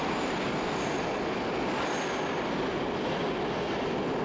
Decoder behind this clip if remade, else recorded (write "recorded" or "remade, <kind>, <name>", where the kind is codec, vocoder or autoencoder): recorded